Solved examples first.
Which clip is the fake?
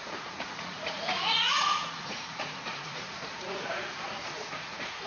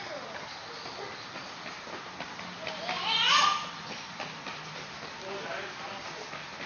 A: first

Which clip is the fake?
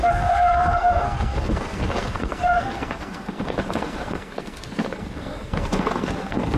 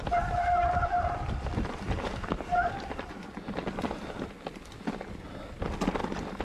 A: first